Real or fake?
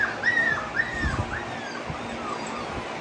real